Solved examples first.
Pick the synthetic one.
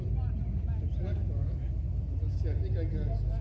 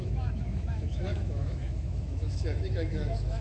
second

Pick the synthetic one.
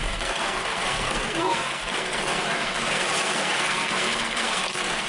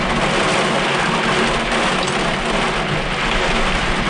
first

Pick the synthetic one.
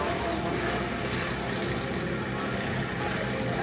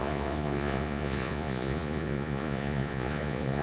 second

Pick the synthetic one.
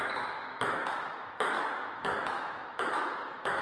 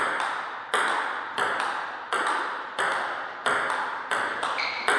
first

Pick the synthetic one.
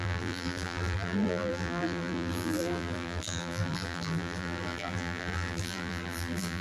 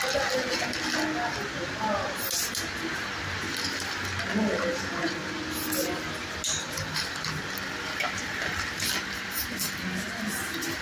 first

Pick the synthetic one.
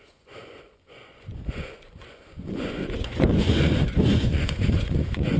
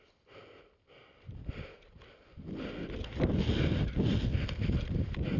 first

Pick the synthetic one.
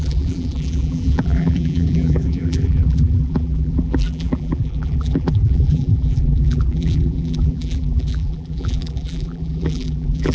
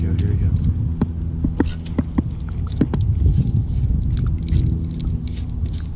first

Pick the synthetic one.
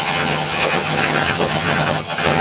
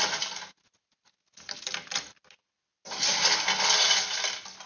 first